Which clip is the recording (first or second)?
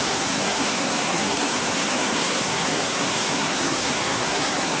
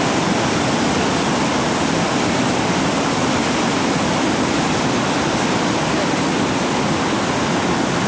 second